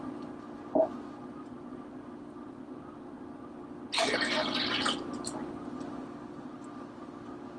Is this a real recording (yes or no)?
yes